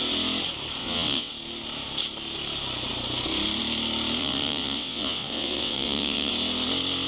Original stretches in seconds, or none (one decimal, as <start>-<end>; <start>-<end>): 0.0-0.8; 1.3-4.2; 6.3-7.1